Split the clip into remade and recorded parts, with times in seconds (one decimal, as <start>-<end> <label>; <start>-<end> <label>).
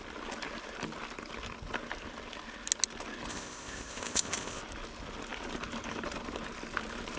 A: 0.0-3.3 recorded; 3.3-4.6 remade; 4.6-7.2 recorded